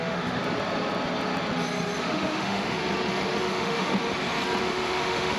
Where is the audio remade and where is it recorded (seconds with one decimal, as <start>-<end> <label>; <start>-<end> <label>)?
0.0-0.4 remade; 0.4-2.0 recorded; 2.0-2.8 remade; 2.8-3.4 recorded; 3.4-3.9 remade; 3.9-4.6 recorded; 4.6-5.4 remade